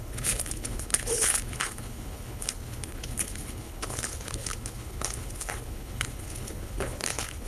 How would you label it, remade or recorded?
remade